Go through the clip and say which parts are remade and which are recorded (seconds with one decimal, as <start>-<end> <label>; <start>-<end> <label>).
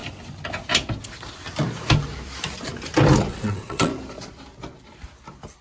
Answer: 0.0-3.3 recorded; 3.3-3.9 remade; 3.9-5.6 recorded